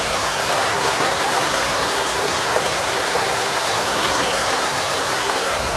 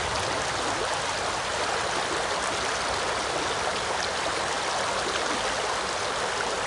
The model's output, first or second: first